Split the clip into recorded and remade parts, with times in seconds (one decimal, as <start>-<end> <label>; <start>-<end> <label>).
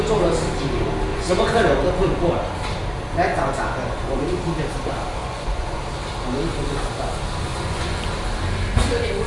0.0-1.1 recorded; 1.1-2.3 remade; 2.3-3.3 recorded; 3.3-4.2 remade; 4.2-5.2 recorded; 5.2-5.8 remade; 5.8-7.5 recorded; 7.5-8.0 remade; 8.0-9.3 recorded